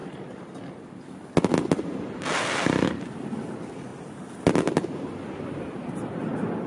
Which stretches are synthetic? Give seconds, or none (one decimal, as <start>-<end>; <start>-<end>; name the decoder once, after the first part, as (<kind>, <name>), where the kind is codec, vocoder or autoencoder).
none